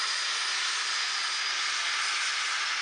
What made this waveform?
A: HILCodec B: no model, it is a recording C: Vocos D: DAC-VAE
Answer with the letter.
B